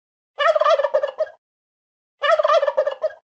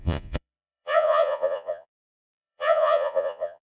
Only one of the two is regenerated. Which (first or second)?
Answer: second